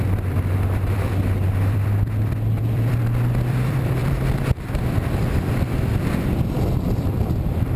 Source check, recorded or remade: remade